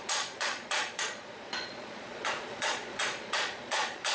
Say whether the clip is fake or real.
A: fake